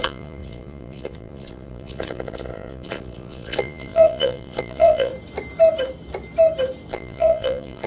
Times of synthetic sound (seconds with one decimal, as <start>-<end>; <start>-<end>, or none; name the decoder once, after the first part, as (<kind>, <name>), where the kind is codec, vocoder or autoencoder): 0.0-5.1 (vocoder, Vocos); 6.9-7.9